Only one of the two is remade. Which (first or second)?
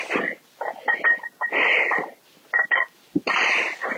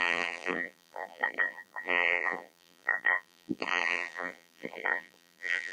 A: second